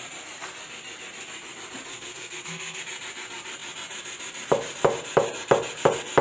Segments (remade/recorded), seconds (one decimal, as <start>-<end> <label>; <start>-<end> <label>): 0.0-1.9 recorded; 1.9-2.8 remade; 2.8-6.2 recorded

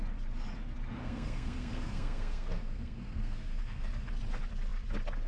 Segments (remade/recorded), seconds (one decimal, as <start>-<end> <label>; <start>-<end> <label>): 0.0-1.0 recorded; 1.0-3.8 remade; 3.8-5.3 recorded

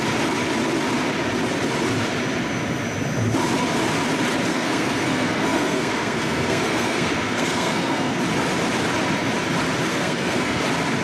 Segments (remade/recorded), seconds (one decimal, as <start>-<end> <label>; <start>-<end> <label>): 0.0-4.5 recorded; 4.5-8.2 remade; 8.2-9.9 recorded; 9.9-10.6 remade; 10.6-11.0 recorded